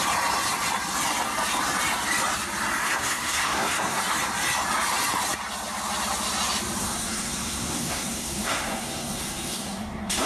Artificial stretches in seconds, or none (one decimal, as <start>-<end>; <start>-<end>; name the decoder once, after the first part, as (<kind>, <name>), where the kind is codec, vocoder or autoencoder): 2.8-4.0 (codec, SNAC); 6.8-10.3

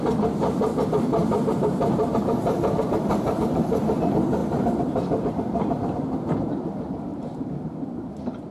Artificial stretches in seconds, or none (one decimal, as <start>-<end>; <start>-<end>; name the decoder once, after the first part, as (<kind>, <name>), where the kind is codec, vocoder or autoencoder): 1.2-3.9 (vocoder, BigVGAN v2); 7.1-8.1